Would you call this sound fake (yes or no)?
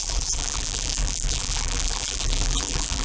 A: yes